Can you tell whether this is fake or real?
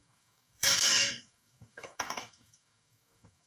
fake